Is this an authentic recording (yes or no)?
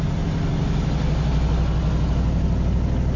yes